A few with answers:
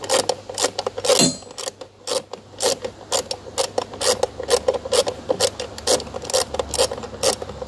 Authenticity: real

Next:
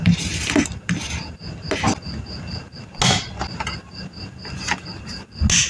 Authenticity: real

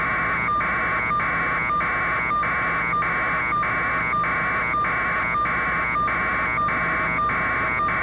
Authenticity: real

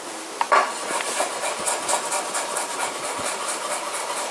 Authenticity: real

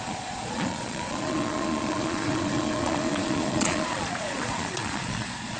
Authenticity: fake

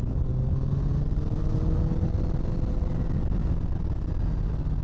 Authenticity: real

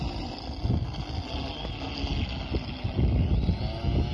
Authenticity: real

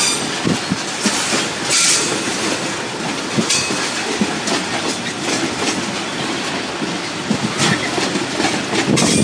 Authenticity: real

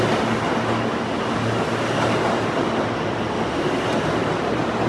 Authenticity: real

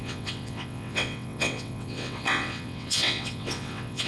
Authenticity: fake